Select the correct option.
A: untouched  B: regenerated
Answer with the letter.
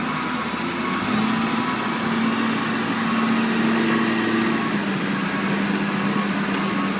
A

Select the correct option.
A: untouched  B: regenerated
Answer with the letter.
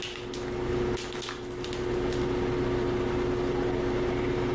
A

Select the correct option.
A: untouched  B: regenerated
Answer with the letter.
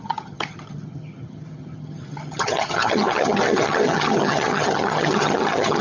B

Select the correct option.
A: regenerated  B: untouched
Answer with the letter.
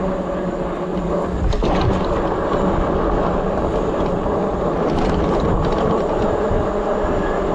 B